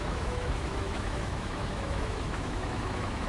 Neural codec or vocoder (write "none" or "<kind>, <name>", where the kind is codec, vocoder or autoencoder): autoencoder, DAC-VAE